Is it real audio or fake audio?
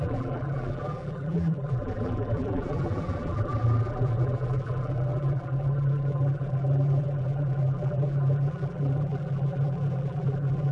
fake